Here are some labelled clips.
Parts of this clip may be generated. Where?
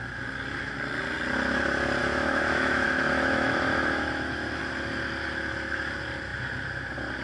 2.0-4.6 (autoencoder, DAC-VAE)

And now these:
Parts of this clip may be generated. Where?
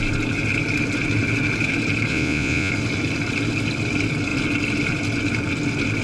2.1-2.7 (vocoder, Vocos)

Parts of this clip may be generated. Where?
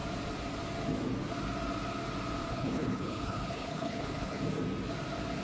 2.5-4.4 (codec, HILCodec)